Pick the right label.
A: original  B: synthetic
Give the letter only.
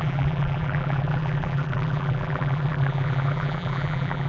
B